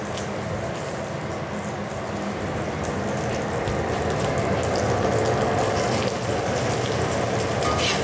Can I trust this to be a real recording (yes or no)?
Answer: yes